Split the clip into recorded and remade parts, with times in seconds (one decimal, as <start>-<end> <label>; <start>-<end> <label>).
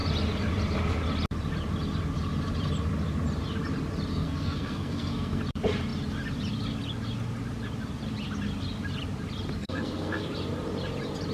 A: 0.0-4.1 recorded; 4.1-5.4 remade; 5.4-9.6 recorded; 9.6-10.2 remade; 10.2-11.3 recorded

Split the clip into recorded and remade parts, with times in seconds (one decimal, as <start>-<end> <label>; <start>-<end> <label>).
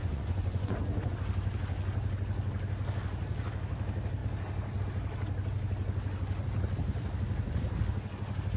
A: 0.0-1.1 remade; 1.1-8.6 recorded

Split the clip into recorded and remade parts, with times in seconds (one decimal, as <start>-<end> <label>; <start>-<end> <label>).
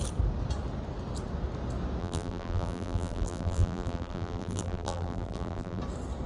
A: 0.0-2.0 recorded; 2.0-5.8 remade; 5.8-6.3 recorded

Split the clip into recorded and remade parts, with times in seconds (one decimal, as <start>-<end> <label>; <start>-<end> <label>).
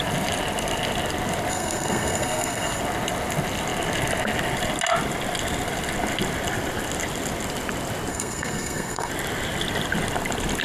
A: 0.0-1.5 recorded; 1.5-2.8 remade; 2.8-8.1 recorded; 8.1-9.1 remade; 9.1-10.6 recorded